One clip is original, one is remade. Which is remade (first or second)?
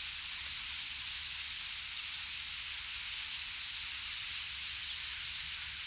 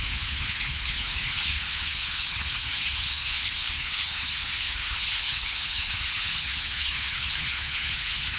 second